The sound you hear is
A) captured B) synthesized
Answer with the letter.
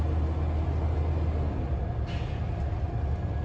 A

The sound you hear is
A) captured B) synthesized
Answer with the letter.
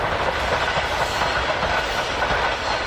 A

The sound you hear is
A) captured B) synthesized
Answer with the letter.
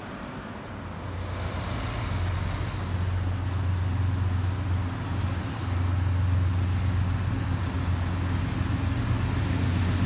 A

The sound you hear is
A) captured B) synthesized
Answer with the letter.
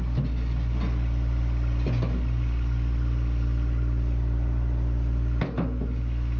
A